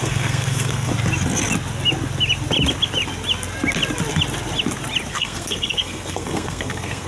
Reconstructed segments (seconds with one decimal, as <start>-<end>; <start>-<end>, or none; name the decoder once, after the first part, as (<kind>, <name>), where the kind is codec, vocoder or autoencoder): 0.0-0.9 (codec, SNAC); 5.1-7.1